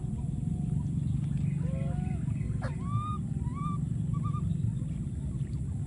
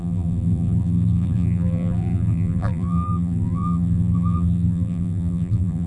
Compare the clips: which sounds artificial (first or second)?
second